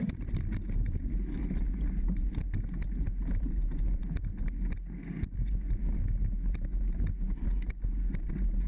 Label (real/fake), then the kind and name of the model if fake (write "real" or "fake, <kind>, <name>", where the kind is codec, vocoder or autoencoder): real